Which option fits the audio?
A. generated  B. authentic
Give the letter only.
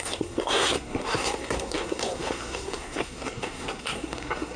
A